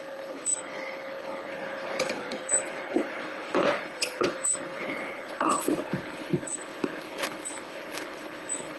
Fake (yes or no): yes